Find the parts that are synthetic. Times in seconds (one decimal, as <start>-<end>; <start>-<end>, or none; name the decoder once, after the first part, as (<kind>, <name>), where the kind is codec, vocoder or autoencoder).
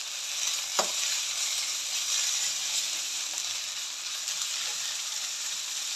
0.7-1.3 (vocoder, BigVGAN v2); 2.6-3.2; 4.7-5.5